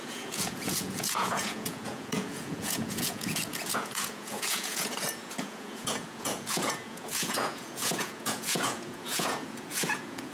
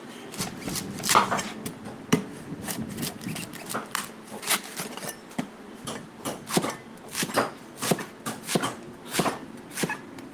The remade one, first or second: first